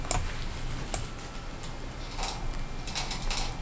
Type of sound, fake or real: real